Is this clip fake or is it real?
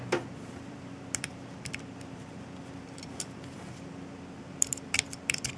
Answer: fake